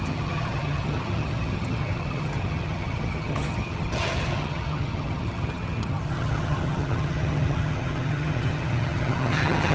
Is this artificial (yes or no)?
yes